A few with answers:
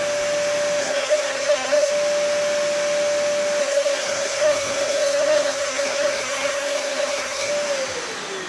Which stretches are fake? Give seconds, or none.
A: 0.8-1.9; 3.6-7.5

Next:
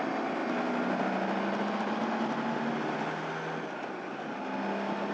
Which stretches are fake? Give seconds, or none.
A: none

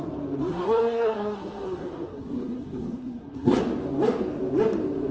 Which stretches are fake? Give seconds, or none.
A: 0.5-3.6

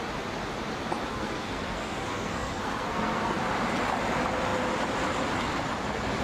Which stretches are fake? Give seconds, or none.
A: 1.1-3.4

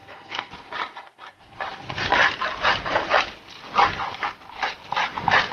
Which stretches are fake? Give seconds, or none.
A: 0.0-0.5

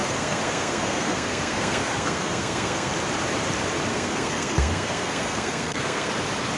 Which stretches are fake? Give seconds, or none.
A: 0.0-2.9; 3.9-6.1

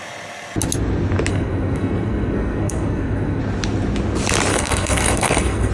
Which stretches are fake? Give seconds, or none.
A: 1.3-3.4; 4.5-5.7